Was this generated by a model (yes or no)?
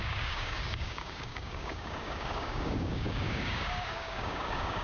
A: yes